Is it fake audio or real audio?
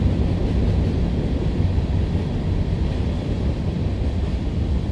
real